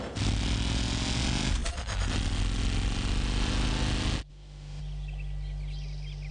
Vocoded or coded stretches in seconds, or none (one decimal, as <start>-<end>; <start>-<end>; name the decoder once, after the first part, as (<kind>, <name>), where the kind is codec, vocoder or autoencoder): 4.3-4.8 (autoencoder, DAC-VAE)